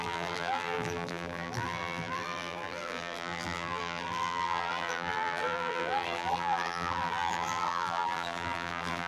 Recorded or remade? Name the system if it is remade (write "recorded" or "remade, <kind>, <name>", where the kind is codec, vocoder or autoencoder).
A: remade, vocoder, BigVGAN v2